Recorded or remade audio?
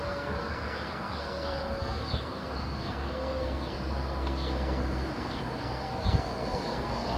remade